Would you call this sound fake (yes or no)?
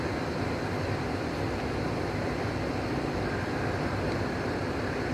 no